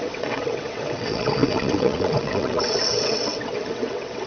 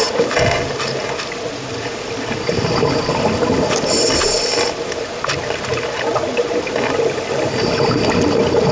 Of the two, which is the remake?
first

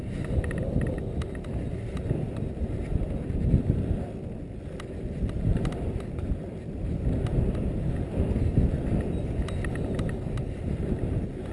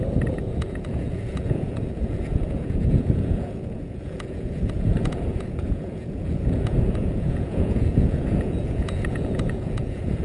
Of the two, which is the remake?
second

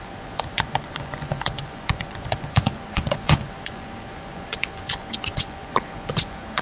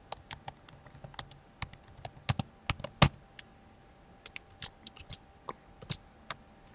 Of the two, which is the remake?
first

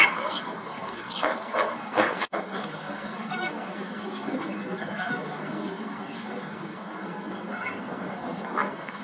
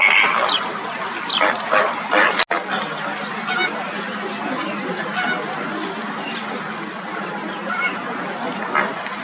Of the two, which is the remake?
first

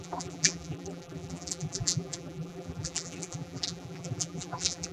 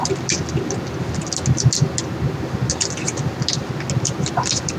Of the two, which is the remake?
first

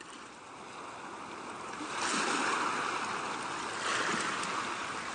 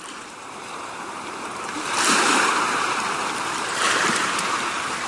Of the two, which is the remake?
second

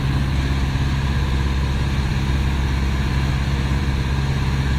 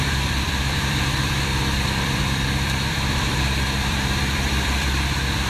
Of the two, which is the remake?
second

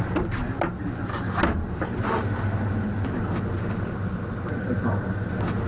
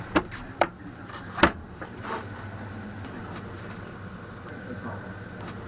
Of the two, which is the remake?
second